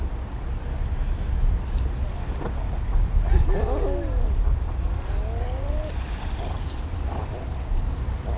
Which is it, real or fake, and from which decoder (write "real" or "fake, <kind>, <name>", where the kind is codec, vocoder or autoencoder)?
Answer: real